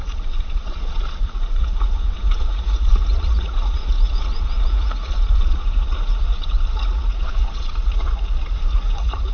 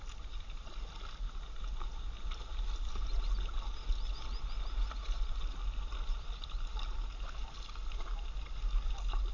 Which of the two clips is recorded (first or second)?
second